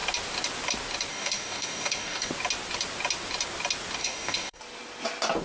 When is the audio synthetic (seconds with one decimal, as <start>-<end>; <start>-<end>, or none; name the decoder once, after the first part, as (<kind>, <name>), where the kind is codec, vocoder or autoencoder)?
1.1-2.3 (codec, DAC); 4.0-4.6